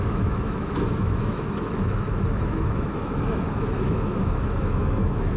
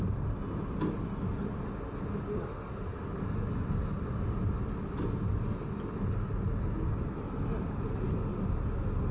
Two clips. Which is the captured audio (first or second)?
second